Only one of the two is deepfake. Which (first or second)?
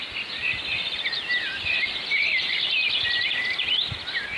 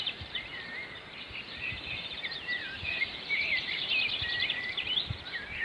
second